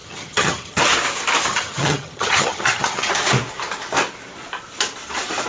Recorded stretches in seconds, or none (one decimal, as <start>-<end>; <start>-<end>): 0.8-1.5; 3.1-5.5